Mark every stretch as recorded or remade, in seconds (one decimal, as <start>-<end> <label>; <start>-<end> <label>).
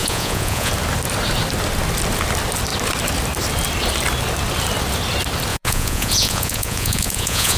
0.0-0.7 remade; 0.7-5.5 recorded; 5.5-7.6 remade